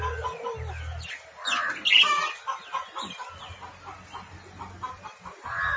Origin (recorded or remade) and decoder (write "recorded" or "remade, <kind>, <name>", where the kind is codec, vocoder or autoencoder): recorded